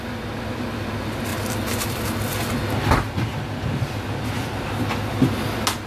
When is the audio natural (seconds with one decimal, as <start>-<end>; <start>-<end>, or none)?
0.0-1.3; 4.8-5.9